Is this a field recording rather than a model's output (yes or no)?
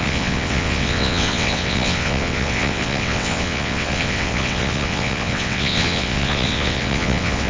no